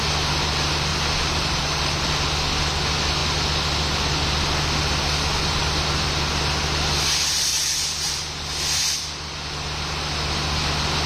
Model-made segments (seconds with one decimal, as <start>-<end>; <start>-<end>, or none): 0.9-2.1; 7.5-8.8